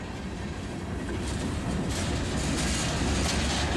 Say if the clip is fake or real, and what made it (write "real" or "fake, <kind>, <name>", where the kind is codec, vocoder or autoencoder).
real